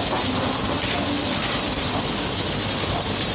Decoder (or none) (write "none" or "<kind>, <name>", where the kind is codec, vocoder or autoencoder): none